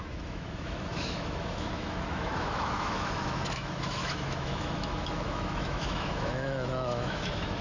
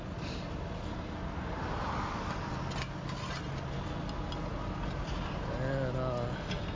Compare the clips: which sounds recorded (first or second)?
second